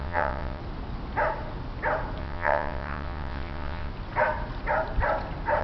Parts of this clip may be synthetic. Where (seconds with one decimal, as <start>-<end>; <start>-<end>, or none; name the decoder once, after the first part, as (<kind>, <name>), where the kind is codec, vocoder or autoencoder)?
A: 0.0-0.6 (vocoder, WaveNeXt); 2.2-3.9